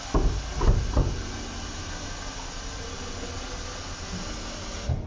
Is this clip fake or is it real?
real